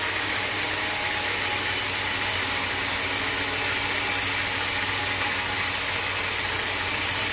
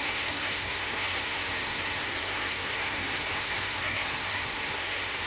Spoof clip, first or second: second